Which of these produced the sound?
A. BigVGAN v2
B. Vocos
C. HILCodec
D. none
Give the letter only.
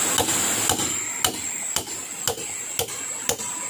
D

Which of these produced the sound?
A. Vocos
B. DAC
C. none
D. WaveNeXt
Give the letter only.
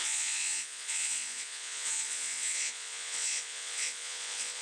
A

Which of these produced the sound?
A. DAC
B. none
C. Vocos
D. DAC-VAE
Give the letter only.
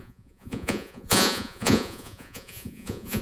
C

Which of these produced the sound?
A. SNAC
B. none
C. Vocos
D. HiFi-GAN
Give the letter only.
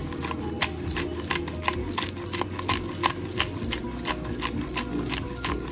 B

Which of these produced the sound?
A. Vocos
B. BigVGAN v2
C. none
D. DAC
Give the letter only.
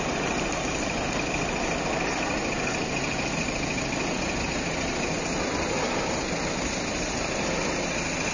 C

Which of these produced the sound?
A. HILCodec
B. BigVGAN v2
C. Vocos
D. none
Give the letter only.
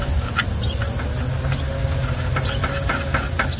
D